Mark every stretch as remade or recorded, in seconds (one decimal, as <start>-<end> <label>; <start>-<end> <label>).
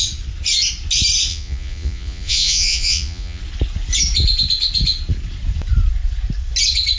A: 0.0-1.3 recorded; 1.3-3.4 remade; 3.4-7.0 recorded